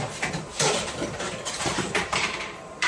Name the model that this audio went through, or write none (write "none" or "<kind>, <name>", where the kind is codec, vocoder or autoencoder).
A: vocoder, BigVGAN v2